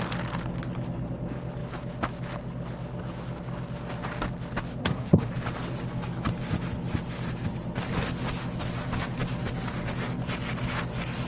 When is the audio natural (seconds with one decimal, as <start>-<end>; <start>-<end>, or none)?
0.0-4.8; 5.3-11.3